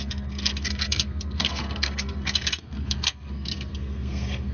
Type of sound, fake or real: fake